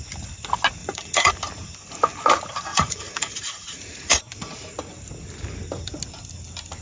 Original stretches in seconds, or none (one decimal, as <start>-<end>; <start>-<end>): 0.0-0.8; 1.3-2.7; 4.2-6.8